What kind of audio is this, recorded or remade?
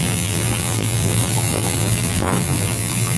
remade